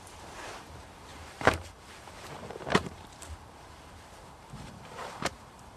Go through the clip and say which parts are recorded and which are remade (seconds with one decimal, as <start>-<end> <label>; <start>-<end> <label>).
0.0-5.8 remade